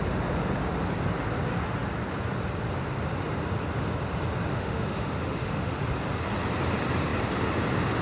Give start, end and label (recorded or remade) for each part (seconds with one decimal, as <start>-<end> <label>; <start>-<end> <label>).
0.0-4.5 recorded; 4.5-5.8 remade; 5.8-8.0 recorded

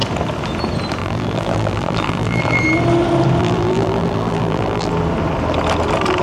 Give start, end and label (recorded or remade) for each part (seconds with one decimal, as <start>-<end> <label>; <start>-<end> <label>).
0.0-1.0 recorded; 1.0-2.6 remade; 2.6-3.4 recorded; 3.4-4.9 remade; 4.9-6.2 recorded

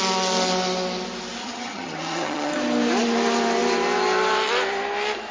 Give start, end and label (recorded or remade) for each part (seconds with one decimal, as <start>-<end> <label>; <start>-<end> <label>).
0.0-1.4 recorded; 1.4-2.5 remade; 2.5-5.3 recorded

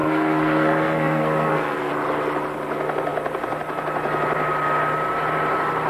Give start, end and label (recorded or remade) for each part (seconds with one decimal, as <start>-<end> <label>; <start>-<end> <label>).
0.0-1.9 remade; 1.9-5.9 recorded

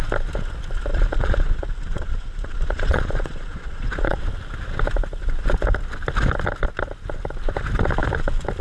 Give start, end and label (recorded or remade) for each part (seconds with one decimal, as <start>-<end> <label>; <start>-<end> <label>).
0.0-0.9 recorded; 0.9-4.2 remade; 4.2-8.6 recorded

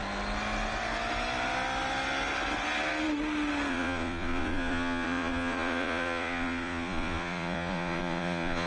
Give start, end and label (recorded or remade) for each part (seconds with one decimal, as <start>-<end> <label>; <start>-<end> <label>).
0.0-3.7 recorded; 3.7-8.7 remade

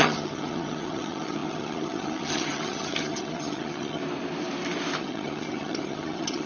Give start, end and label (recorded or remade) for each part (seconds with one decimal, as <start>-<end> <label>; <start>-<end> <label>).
0.0-4.0 remade; 4.0-5.0 recorded; 5.0-6.5 remade